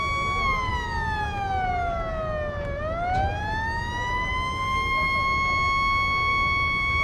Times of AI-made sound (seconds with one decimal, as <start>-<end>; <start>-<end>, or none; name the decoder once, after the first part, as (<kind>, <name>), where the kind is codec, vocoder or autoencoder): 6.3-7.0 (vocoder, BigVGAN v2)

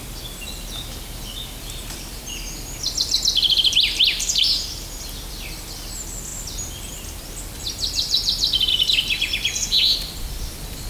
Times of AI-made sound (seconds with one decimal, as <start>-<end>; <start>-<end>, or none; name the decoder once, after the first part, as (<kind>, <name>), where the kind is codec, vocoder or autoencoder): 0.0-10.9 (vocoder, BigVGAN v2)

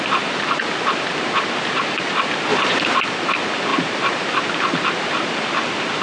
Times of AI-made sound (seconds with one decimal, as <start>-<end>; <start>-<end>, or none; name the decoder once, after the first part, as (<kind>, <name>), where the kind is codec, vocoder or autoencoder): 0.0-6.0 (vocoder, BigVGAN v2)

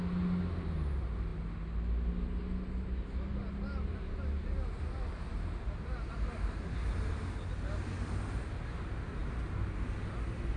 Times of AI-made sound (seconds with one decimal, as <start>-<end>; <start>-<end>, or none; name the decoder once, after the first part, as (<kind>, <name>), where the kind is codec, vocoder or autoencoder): 3.3-7.2 (vocoder, BigVGAN v2)